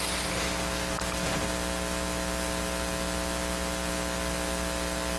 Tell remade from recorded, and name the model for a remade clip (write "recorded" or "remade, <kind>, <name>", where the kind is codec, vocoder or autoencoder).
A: recorded